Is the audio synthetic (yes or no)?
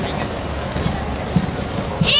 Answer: no